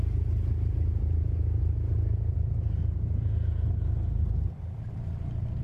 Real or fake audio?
real